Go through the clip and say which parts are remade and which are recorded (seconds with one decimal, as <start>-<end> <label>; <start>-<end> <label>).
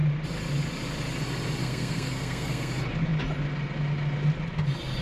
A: 0.0-1.6 recorded; 1.6-2.7 remade; 2.7-5.0 recorded